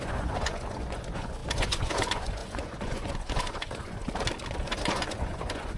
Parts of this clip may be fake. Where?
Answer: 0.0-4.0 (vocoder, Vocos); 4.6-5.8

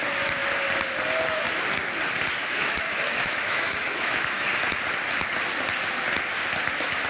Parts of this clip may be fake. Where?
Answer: 2.4-4.5 (autoencoder, DAC-VAE)